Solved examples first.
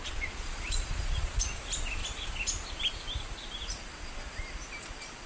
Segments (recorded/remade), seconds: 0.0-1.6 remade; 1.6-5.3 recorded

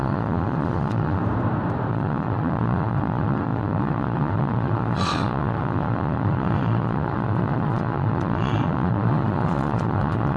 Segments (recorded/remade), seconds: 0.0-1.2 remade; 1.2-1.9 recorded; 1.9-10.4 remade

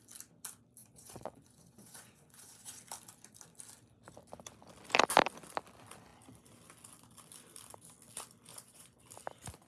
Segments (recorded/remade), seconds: 0.0-0.8 recorded; 0.8-2.8 remade; 2.8-8.5 recorded; 8.5-9.0 remade; 9.0-9.7 recorded

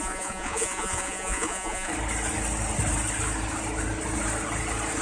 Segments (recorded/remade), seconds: 0.0-1.9 remade; 1.9-5.0 recorded

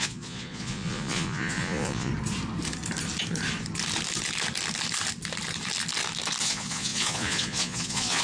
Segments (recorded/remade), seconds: 0.0-2.1 remade; 2.1-6.4 recorded; 6.4-8.2 remade

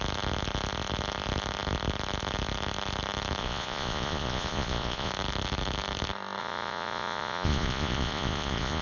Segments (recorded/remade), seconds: 0.0-3.4 recorded; 3.4-5.1 remade; 5.1-6.4 recorded; 6.4-8.8 remade

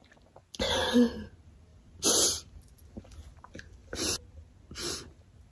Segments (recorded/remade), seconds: 0.0-5.5 recorded